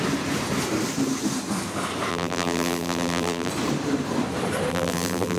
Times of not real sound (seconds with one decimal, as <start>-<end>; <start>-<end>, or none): 2.1-3.5; 4.7-5.4